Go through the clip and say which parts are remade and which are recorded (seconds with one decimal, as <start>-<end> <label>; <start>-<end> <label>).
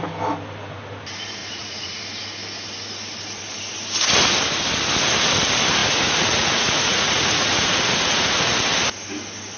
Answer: 0.0-1.4 recorded; 1.4-2.0 remade; 2.0-5.8 recorded; 5.8-8.5 remade; 8.5-9.6 recorded